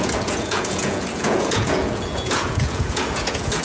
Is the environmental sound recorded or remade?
remade